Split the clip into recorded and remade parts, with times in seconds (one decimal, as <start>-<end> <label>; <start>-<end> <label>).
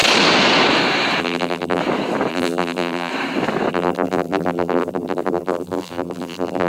0.0-1.2 recorded; 1.2-1.8 remade; 1.8-2.3 recorded; 2.3-3.1 remade; 3.1-3.7 recorded; 3.7-6.7 remade